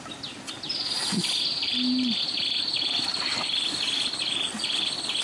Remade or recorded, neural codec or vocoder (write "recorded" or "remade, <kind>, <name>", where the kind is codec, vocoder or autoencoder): recorded